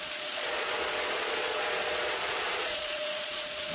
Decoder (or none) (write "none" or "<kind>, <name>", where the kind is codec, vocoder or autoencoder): vocoder, Vocos